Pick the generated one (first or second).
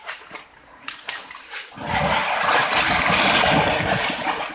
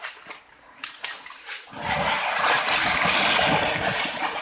first